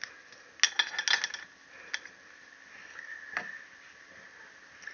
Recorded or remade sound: recorded